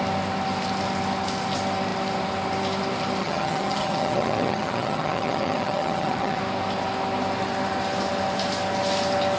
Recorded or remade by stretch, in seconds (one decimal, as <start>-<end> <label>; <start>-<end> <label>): 0.0-3.2 recorded; 3.2-6.4 remade; 6.4-9.4 recorded